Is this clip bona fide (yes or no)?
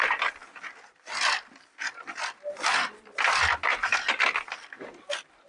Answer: no